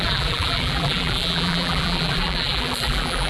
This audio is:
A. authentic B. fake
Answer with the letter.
B